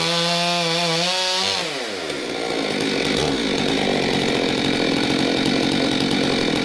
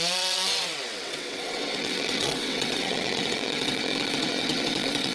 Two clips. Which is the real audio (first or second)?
first